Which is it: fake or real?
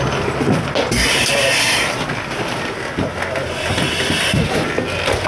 real